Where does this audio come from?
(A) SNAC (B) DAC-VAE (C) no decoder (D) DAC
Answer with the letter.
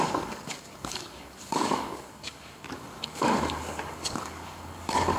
D